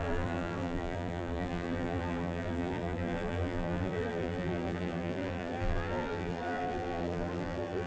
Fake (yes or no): yes